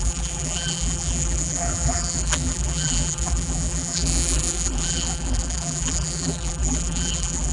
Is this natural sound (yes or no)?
no